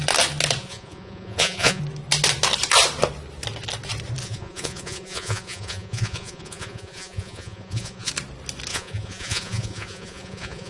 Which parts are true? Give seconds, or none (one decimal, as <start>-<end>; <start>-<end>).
0.0-0.6; 1.8-4.2; 8.1-8.7